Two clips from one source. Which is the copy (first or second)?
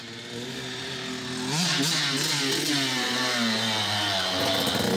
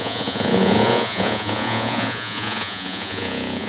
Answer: second